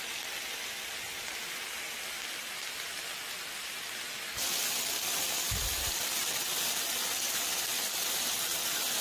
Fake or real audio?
real